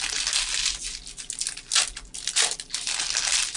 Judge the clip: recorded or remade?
recorded